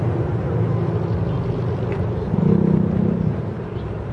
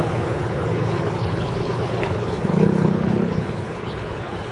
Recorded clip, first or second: first